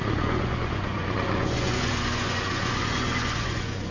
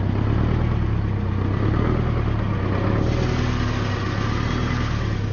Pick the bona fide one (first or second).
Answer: second